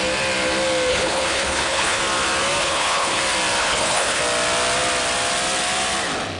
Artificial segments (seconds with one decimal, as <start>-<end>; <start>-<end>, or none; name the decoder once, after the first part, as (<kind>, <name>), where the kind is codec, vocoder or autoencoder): 0.9-2.0 (codec, HILCodec); 2.6-3.2; 3.6-4.2